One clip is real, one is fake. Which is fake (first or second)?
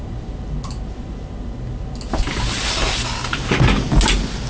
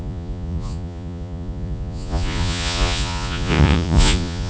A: second